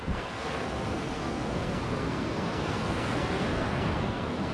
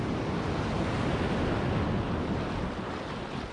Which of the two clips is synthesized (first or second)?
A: first